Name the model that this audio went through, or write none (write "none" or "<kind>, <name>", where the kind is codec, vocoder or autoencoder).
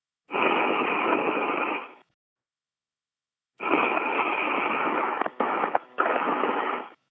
autoencoder, DAC-VAE